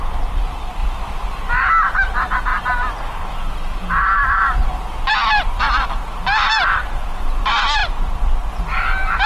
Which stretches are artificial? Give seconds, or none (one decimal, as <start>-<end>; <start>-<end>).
0.0-2.5; 4.0-4.6; 5.1-9.3